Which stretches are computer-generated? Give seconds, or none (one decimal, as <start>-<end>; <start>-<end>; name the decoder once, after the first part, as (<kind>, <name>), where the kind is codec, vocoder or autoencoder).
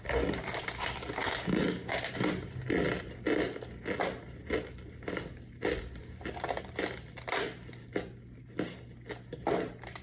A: 1.2-2.0 (codec, DAC)